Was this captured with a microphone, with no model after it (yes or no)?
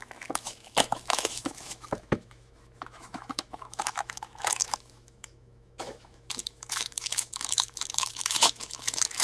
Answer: no